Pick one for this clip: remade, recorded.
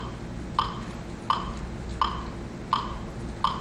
recorded